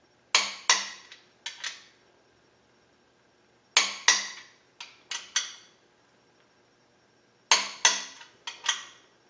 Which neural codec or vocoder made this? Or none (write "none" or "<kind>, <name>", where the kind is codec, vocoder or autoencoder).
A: none